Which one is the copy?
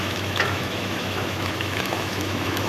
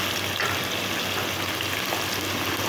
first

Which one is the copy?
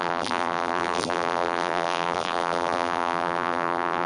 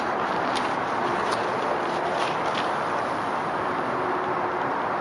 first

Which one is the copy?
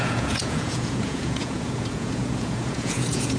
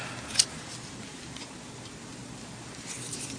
first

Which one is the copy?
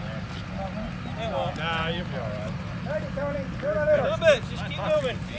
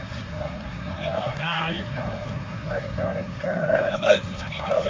second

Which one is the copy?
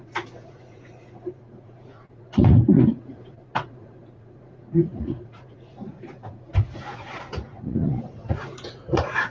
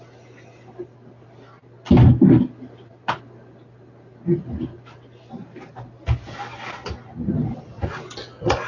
first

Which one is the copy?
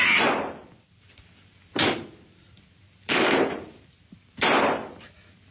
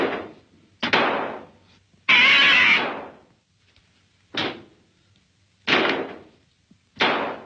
first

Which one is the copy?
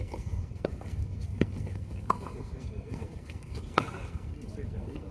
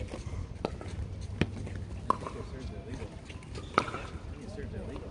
first